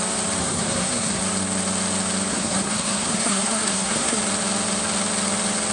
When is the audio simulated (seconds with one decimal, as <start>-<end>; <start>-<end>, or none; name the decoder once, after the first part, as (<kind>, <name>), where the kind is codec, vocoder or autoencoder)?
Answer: 0.4-1.2 (codec, SNAC); 2.3-4.2